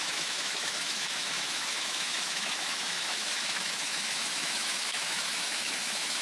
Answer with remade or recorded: remade